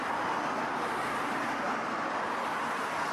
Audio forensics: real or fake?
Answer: real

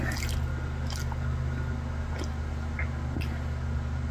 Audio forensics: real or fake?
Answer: real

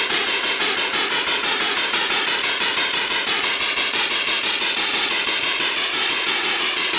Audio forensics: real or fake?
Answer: fake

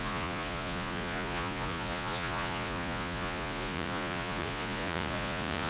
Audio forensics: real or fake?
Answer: fake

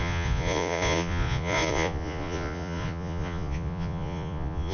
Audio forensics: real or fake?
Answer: fake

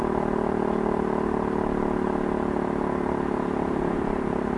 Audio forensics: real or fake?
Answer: real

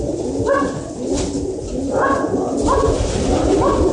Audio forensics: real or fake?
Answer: real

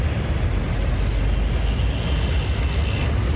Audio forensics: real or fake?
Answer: real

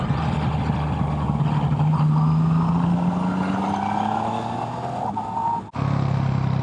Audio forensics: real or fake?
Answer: real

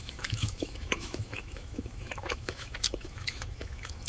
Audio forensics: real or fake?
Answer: fake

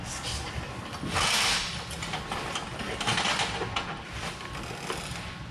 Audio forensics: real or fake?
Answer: real